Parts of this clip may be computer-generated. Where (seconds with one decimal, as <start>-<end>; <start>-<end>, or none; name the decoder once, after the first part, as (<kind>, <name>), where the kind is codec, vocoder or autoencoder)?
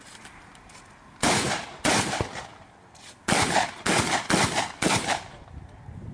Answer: none